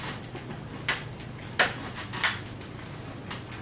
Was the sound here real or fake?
real